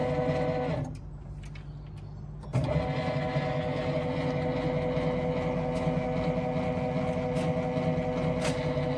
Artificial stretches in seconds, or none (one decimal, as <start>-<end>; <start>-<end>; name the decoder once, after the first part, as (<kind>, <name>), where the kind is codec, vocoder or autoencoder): none